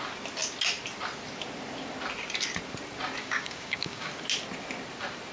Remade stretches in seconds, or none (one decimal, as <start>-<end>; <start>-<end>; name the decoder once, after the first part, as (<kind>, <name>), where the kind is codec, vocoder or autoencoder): 3.2-4.1 (codec, DAC)